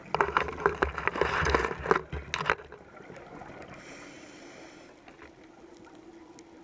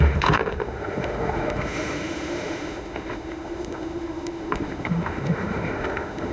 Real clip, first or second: first